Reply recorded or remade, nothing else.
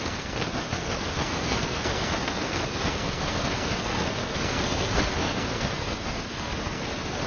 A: remade